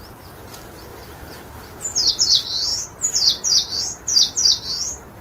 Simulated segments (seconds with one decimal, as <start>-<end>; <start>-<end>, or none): 0.9-2.1

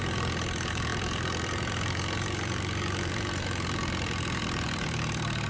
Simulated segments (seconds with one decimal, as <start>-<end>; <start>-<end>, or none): 0.0-5.5